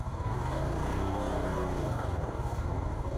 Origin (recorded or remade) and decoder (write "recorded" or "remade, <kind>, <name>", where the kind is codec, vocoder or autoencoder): remade, codec, DAC